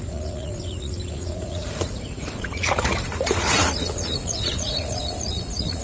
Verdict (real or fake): fake